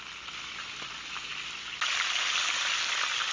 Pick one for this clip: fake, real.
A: real